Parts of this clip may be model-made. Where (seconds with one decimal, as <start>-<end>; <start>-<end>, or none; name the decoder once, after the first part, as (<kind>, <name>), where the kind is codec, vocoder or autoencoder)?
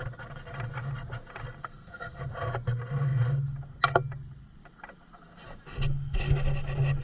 1.6-2.2 (codec, SNAC)